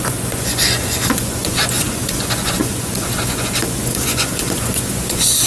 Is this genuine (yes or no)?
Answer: no